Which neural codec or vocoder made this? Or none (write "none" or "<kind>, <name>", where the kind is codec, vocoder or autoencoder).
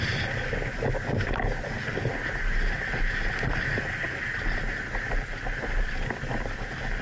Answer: none